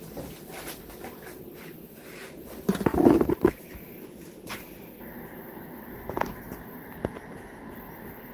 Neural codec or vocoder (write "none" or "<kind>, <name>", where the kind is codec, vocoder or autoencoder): none